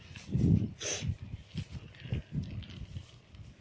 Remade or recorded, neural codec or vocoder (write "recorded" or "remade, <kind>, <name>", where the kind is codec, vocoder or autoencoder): recorded